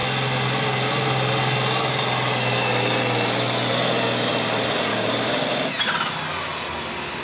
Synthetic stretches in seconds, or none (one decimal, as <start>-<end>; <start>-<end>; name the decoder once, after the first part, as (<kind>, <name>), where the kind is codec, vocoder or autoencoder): 4.9-5.7 (codec, DAC)